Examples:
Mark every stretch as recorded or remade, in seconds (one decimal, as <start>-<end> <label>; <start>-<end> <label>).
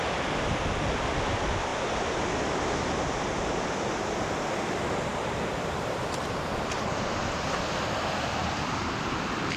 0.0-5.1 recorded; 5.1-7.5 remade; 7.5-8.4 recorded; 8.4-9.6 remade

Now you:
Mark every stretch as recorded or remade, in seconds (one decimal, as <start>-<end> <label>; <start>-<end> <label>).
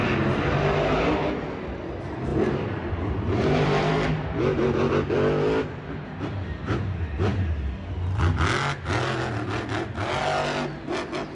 0.0-2.3 recorded; 2.3-3.9 remade; 3.9-11.3 recorded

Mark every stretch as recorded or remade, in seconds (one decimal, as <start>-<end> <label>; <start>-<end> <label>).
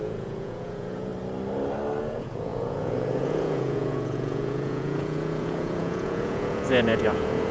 0.0-1.1 remade; 1.1-2.0 recorded; 2.0-7.5 remade